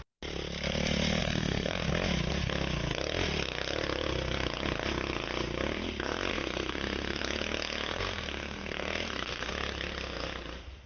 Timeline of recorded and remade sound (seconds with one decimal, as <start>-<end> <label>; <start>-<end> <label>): 0.0-1.2 recorded; 1.2-1.9 remade; 1.9-6.3 recorded; 6.3-7.2 remade; 7.2-7.9 recorded; 7.9-9.5 remade; 9.5-10.9 recorded